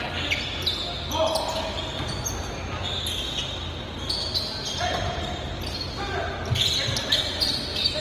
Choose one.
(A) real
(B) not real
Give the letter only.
A